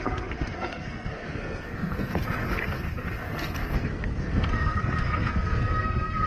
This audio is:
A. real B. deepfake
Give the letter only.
B